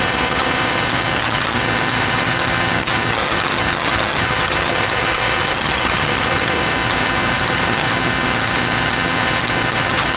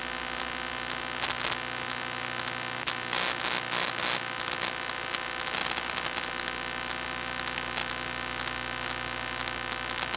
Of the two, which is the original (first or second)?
second